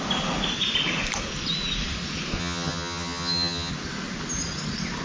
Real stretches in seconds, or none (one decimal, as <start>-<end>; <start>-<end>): 0.0-2.4; 3.7-5.0